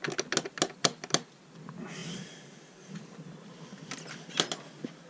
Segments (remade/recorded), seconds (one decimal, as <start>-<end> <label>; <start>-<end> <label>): 0.0-5.1 recorded